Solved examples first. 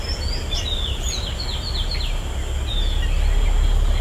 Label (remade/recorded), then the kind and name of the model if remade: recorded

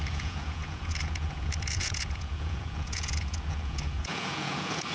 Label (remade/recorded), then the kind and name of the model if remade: remade, vocoder, Vocos